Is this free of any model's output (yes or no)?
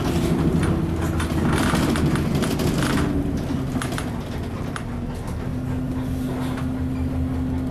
yes